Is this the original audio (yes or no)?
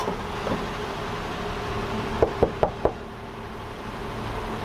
yes